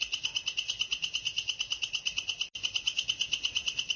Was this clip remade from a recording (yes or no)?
no